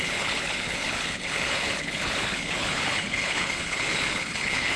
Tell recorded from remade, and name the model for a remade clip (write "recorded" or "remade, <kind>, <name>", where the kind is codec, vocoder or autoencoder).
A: remade, codec, HILCodec